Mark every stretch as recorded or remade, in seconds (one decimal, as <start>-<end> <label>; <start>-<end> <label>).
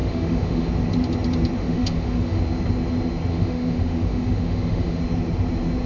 0.0-0.7 remade; 0.7-1.6 recorded; 1.6-2.4 remade; 2.4-3.3 recorded; 3.3-5.0 remade; 5.0-5.9 recorded